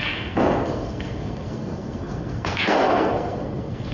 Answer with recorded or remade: remade